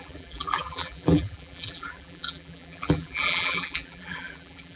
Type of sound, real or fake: fake